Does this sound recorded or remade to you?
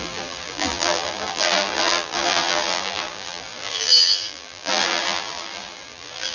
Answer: remade